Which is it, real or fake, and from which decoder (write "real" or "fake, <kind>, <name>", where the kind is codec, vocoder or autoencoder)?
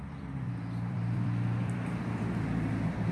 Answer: fake, vocoder, BigVGAN v2